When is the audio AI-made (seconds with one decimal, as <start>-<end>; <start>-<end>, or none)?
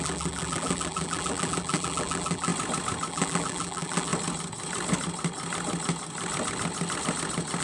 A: 0.0-2.5; 3.1-4.1